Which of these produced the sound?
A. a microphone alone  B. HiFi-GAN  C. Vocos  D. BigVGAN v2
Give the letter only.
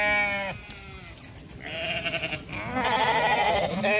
A